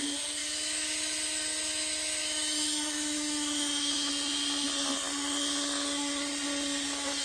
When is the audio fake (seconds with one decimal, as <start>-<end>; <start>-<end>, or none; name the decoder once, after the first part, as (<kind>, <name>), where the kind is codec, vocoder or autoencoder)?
0.4-4.1 (autoencoder, DAC-VAE)